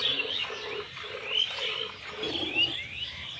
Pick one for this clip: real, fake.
real